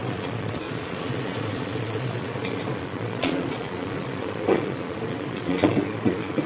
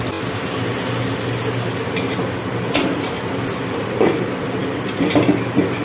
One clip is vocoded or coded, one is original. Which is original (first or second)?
second